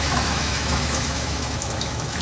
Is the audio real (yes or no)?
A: no